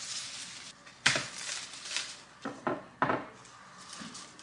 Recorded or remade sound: recorded